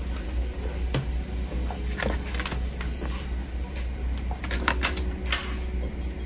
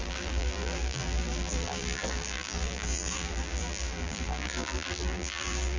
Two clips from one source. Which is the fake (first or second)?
second